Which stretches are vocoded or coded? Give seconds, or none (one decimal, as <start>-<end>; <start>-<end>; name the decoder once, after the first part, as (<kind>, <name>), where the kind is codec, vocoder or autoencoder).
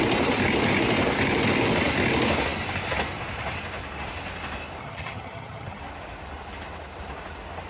4.8-5.8 (vocoder, HiFi-GAN)